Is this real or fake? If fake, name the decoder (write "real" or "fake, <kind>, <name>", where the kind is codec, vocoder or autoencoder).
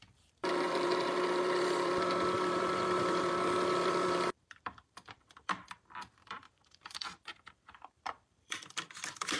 fake, vocoder, BigVGAN v2